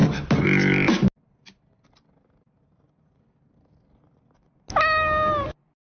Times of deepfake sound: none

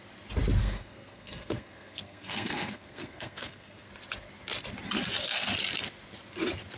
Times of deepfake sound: 0.6-3.9 (codec, SNAC)

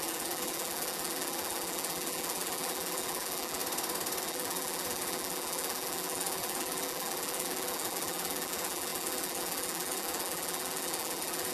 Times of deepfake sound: 0.0-3.6 (vocoder, BigVGAN v2); 4.2-11.5

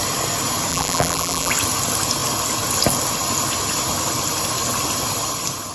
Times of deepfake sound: 0.7-1.5 (vocoder, BigVGAN v2)